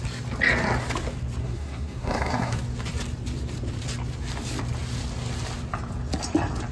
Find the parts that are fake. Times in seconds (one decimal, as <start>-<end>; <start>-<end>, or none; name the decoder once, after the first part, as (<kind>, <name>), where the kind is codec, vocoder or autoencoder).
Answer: 1.4-2.6 (codec, SNAC)